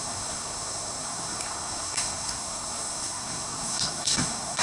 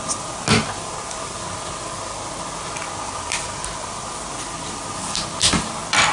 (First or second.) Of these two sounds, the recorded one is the second